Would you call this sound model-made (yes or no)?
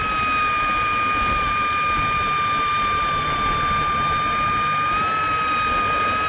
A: no